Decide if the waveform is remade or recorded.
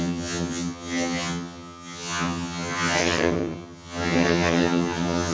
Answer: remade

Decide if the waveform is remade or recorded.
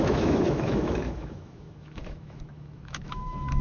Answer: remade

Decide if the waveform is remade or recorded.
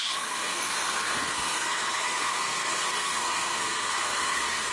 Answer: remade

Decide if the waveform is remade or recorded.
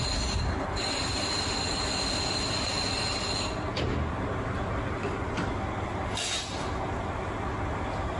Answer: recorded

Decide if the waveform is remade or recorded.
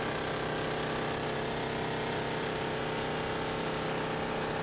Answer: recorded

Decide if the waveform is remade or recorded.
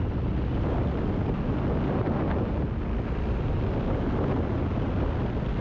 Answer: recorded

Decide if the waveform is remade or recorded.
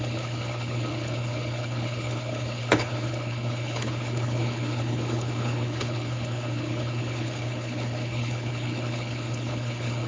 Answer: remade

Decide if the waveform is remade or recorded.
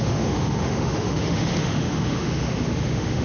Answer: remade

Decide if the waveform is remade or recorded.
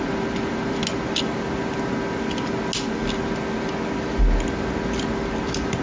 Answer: recorded